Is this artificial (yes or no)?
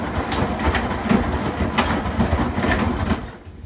no